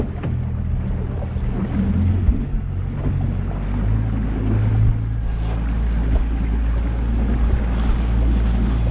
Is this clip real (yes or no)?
yes